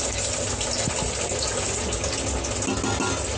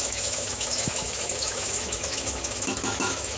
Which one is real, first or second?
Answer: first